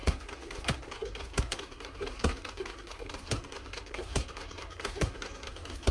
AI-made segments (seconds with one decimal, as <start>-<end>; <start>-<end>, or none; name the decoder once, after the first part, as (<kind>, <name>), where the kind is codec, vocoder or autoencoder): 0.0-5.9 (codec, SNAC)